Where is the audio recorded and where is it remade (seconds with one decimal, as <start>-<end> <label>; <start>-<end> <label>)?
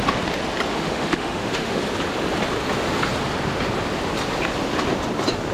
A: 0.0-0.7 recorded; 0.7-1.8 remade; 1.8-5.5 recorded